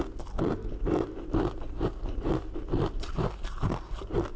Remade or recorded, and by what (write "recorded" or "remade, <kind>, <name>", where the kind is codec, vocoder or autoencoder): recorded